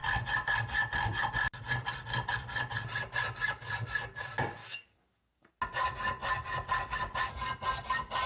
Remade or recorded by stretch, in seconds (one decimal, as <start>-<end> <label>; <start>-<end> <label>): 0.0-4.6 recorded; 4.6-5.5 remade; 5.5-8.3 recorded